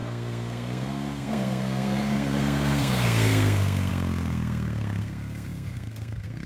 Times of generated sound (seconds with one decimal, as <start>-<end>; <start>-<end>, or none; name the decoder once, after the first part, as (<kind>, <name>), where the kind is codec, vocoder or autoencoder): 0.0-6.5 (codec, SNAC)